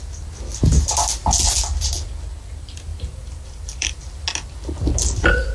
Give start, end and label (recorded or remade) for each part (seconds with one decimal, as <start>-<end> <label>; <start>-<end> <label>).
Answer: 0.0-2.9 recorded; 2.9-4.0 remade; 4.0-5.5 recorded

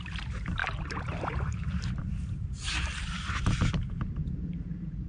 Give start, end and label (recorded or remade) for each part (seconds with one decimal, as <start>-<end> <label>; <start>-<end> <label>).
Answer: 0.0-5.1 remade